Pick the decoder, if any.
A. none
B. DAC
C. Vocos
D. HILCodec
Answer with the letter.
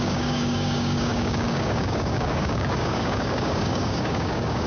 B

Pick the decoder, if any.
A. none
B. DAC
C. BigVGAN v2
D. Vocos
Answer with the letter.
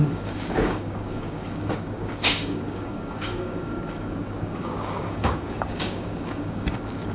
B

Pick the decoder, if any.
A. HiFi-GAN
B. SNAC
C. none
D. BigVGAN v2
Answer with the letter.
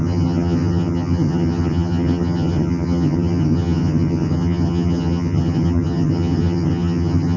A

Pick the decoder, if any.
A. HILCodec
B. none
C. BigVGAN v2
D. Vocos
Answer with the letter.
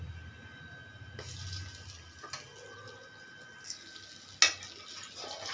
B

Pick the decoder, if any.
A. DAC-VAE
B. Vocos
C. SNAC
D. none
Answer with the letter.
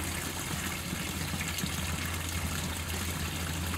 D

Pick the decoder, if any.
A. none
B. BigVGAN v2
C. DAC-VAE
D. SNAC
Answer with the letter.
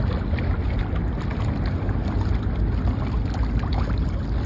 A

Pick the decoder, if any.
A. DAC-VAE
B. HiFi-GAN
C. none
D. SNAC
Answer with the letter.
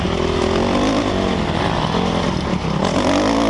C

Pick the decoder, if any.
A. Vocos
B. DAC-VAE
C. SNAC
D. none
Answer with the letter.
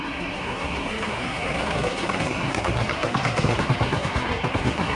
C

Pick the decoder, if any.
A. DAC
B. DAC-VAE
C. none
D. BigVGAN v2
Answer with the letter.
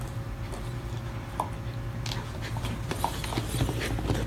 C